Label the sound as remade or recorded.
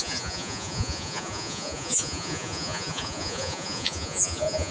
remade